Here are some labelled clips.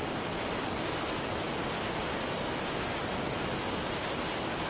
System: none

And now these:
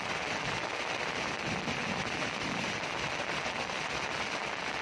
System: none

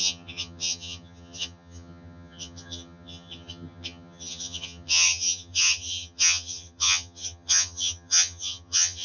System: vocoder, HiFi-GAN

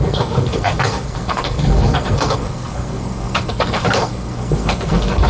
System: codec, SNAC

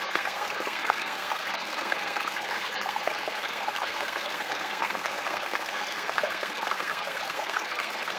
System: codec, SNAC